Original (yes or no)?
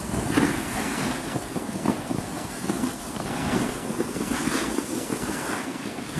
no